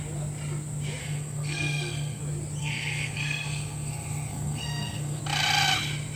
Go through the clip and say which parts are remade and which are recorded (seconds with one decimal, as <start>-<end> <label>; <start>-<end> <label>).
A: 0.0-1.0 recorded; 1.0-2.2 remade; 2.2-2.6 recorded; 2.6-5.2 remade; 5.2-6.2 recorded